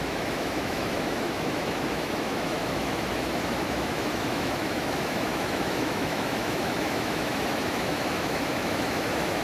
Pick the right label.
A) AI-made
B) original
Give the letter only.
A